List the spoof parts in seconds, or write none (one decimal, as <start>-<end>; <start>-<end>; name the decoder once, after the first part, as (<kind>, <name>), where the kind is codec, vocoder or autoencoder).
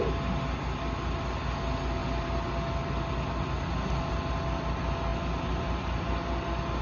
none